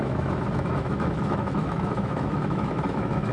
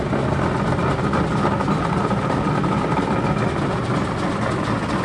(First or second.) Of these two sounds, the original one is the second